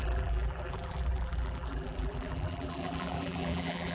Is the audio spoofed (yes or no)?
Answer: yes